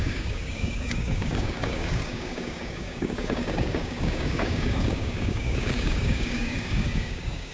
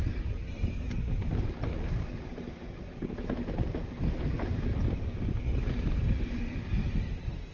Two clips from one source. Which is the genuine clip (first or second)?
second